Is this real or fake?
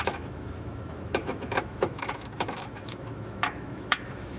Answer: fake